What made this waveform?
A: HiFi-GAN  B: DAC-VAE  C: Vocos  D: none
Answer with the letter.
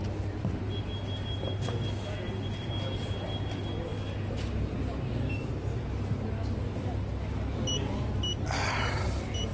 D